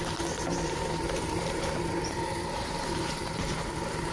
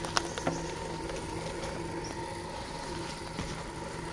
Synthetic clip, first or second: first